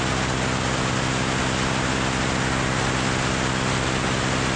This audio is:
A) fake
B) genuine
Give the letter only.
B